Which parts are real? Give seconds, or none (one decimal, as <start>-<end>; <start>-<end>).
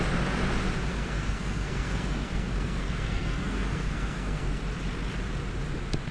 0.0-0.9; 4.6-6.1